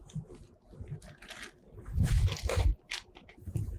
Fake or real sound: fake